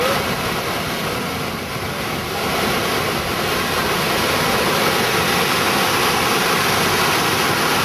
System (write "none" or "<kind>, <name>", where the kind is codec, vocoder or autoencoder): none